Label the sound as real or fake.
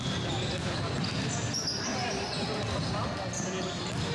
real